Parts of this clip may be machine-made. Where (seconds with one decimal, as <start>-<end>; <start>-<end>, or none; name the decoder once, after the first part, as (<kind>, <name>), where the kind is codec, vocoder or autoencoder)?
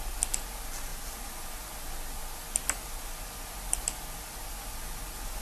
none